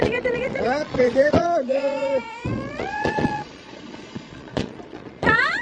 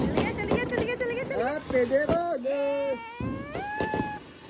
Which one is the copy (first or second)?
first